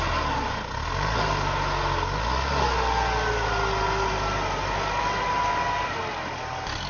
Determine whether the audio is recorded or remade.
recorded